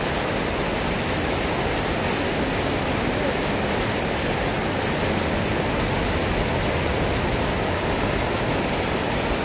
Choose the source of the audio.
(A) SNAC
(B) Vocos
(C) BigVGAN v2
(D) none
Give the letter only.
D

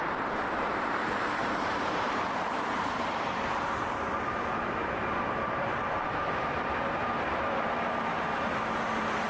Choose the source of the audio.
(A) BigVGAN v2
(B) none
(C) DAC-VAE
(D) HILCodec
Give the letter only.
A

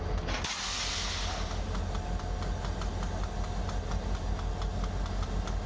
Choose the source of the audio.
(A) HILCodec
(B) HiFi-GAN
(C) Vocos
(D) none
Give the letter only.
D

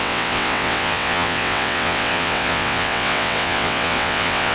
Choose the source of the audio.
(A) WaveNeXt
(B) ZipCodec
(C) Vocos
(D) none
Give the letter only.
A